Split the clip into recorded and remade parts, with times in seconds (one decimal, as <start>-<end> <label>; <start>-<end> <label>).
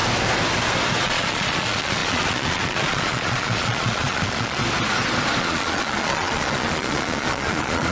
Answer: 0.0-1.0 recorded; 1.0-4.6 remade; 4.6-5.4 recorded; 5.4-7.9 remade